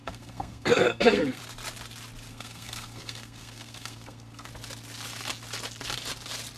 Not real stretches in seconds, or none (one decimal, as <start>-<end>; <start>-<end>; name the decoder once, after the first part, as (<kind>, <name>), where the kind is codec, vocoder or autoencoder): 0.0-1.4 (codec, SNAC); 2.3-4.5